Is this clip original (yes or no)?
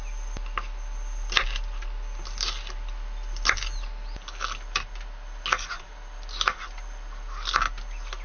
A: yes